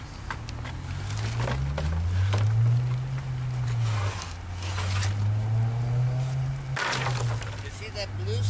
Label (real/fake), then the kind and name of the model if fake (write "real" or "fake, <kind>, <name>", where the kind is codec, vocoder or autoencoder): real